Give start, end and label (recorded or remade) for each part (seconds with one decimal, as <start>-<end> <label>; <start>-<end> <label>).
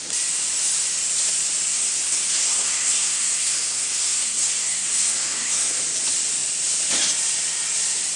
0.0-1.7 recorded; 1.7-5.8 remade; 5.8-8.2 recorded